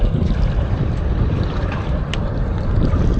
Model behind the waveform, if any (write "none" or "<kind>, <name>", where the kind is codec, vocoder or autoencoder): vocoder, BigVGAN v2